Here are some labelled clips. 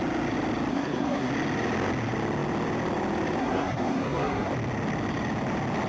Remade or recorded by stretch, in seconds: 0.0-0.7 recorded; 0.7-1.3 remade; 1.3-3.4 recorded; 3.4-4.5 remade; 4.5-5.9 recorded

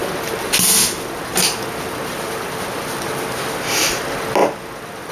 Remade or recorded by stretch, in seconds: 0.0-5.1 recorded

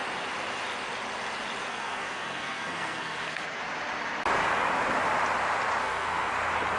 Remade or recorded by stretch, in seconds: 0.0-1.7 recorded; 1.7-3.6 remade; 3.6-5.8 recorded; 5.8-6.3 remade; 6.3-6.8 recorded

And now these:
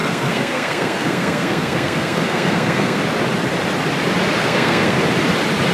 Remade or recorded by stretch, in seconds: 0.0-3.0 remade; 3.0-4.4 recorded; 4.4-5.0 remade; 5.0-5.7 recorded

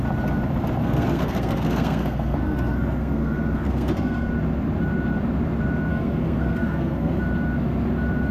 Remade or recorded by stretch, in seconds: 0.0-0.8 recorded; 0.8-4.3 remade; 4.3-5.9 recorded; 5.9-7.3 remade; 7.3-8.3 recorded